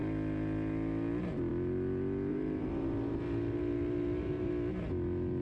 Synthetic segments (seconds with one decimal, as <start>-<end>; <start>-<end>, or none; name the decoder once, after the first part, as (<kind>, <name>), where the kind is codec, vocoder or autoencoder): 2.3-4.5 (vocoder, BigVGAN v2)